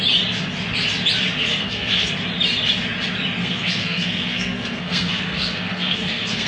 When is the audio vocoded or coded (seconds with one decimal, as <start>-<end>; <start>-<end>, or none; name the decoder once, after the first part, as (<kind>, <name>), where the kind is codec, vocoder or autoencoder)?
1.5-2.1 (codec, SNAC); 3.4-6.5